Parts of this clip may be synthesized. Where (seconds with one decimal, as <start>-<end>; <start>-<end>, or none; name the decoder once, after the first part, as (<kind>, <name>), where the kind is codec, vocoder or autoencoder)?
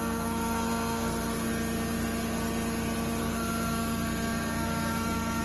0.0-1.5 (codec, SNAC); 3.2-5.4